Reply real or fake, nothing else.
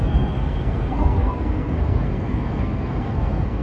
fake